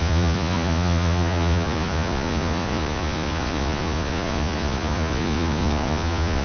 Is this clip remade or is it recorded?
remade